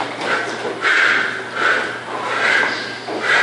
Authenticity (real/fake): real